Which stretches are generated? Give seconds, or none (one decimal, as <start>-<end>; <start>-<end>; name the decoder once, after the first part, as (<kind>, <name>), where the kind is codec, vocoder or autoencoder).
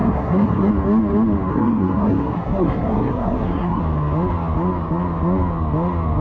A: 0.0-0.7 (codec, SNAC); 1.5-3.8